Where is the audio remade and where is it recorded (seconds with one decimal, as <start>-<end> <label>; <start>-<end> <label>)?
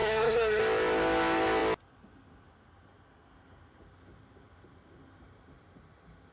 0.0-0.6 remade; 0.6-6.3 recorded